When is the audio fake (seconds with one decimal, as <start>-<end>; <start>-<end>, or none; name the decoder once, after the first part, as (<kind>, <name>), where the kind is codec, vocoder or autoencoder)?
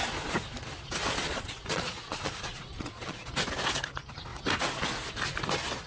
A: 1.0-3.3 (vocoder, Vocos)